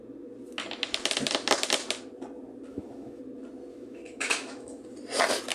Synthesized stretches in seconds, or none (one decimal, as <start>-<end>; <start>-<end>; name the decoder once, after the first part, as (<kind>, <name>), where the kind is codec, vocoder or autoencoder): 2.7-3.2 (autoencoder, DAC-VAE); 3.7-4.8